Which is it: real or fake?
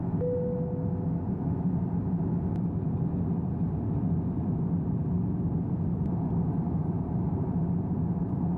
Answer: real